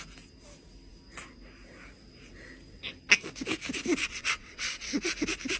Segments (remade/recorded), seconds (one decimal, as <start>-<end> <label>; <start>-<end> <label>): 0.0-4.0 recorded; 4.0-5.0 remade; 5.0-5.6 recorded